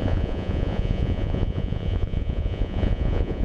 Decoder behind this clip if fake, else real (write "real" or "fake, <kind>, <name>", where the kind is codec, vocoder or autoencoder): fake, vocoder, Vocos